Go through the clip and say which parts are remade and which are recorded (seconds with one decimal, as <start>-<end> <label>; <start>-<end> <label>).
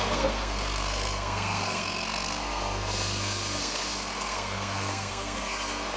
0.0-6.0 remade